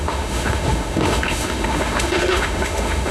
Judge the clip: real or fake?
fake